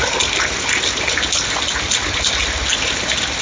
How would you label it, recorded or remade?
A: recorded